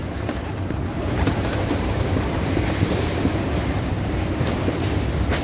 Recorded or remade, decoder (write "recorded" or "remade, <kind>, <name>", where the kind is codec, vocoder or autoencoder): recorded